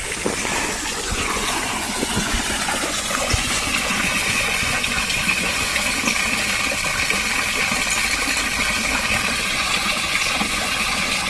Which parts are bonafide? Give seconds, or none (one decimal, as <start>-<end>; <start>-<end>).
0.0-0.8; 5.7-9.3